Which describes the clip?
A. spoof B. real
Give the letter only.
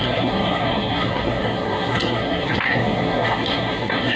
A